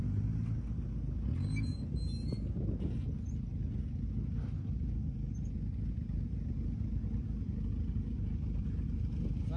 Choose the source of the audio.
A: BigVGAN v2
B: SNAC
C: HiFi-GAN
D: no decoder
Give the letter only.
D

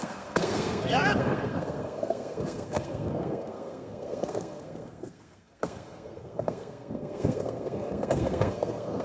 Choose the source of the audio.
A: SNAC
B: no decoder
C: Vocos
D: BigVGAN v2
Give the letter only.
A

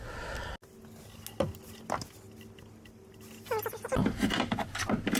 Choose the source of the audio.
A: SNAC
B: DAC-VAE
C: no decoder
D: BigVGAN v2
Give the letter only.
C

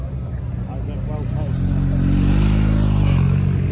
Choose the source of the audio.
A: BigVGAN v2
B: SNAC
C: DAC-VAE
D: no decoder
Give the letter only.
D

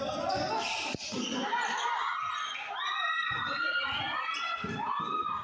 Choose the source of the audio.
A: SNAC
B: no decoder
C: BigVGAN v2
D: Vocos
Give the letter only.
B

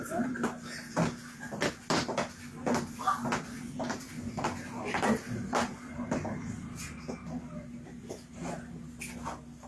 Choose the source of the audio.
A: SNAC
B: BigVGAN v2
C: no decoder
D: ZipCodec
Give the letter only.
C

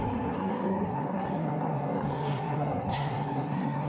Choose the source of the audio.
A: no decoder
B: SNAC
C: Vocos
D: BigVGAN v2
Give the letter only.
B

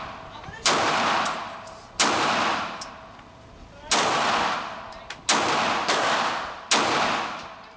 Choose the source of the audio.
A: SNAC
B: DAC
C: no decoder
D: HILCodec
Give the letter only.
C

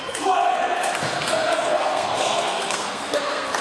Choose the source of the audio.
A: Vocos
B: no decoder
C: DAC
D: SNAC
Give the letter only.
D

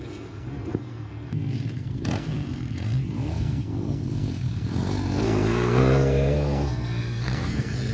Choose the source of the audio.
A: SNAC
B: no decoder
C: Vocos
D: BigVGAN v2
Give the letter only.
A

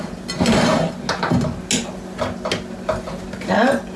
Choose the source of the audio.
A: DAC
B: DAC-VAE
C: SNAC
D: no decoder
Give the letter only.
D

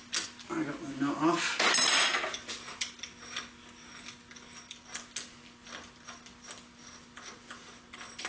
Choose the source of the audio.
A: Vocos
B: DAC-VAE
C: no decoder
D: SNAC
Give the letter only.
C